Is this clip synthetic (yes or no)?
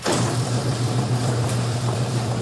yes